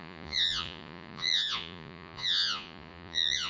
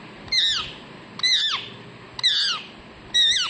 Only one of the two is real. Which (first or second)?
second